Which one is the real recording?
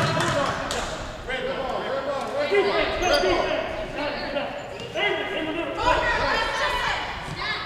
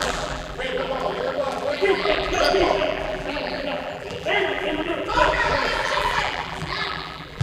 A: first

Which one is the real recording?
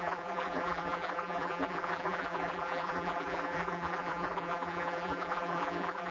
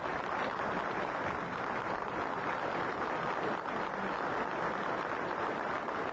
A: second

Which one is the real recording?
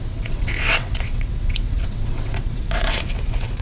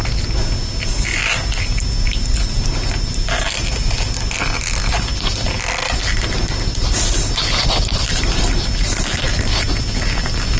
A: second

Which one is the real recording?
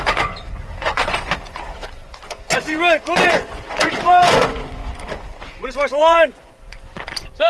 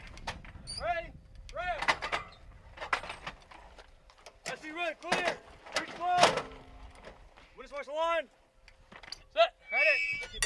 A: second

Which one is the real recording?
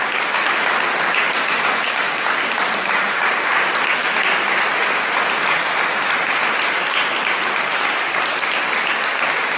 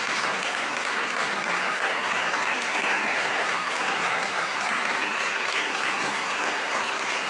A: first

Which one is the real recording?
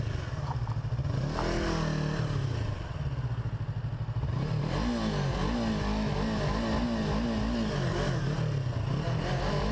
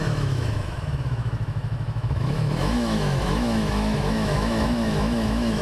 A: first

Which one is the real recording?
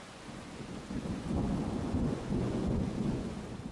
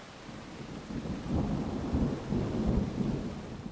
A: second